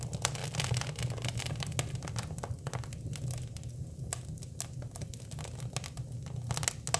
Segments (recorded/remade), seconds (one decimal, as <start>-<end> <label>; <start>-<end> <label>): 0.0-7.0 recorded